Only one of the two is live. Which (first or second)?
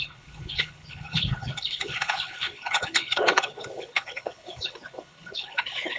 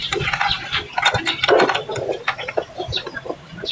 second